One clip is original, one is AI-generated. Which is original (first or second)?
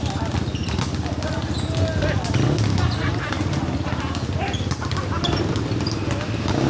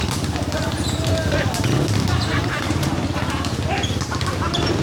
first